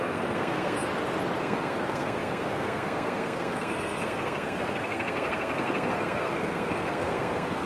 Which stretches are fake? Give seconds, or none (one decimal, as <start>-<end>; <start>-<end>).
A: 0.0-0.9; 1.4-7.7